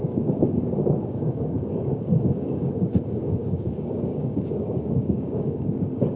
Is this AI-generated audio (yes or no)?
yes